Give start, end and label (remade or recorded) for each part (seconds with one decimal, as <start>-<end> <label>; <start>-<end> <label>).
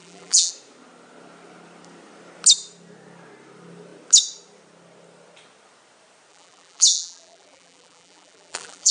0.0-0.5 remade; 0.5-6.3 recorded; 6.3-8.9 remade